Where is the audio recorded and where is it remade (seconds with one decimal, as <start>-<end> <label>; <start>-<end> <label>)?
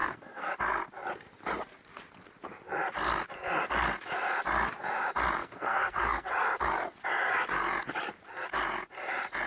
0.0-0.5 remade; 0.5-5.4 recorded; 5.4-6.3 remade; 6.3-9.5 recorded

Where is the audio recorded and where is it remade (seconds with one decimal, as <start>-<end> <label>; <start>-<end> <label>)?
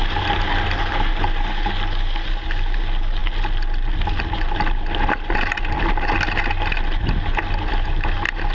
0.0-8.5 recorded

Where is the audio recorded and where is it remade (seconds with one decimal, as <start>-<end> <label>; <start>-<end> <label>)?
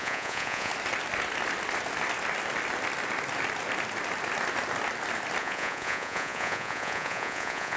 0.0-0.7 remade; 0.7-5.4 recorded; 5.4-7.8 remade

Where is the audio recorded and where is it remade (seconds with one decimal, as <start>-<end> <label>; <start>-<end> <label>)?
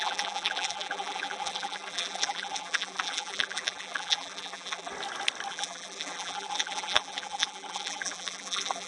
0.0-4.9 remade; 4.9-5.5 recorded; 5.5-8.9 remade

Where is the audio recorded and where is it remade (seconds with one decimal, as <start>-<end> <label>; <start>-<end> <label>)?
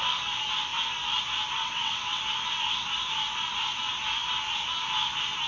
0.0-1.6 recorded; 1.6-2.2 remade; 2.2-5.5 recorded